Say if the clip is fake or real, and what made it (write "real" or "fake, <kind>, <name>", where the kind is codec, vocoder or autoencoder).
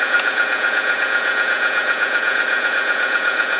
fake, vocoder, Vocos